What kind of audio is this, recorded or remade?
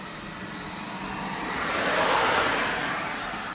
recorded